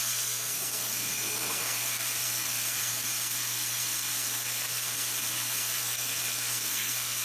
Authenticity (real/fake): fake